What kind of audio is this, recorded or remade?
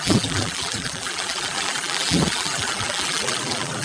remade